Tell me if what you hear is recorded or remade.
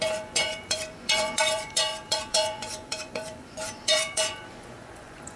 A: remade